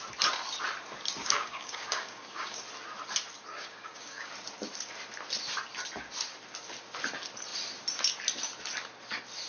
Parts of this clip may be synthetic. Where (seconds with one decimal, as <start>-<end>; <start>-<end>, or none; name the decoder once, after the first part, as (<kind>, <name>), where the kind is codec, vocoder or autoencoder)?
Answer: 1.2-2.6 (codec, DAC); 3.5-4.3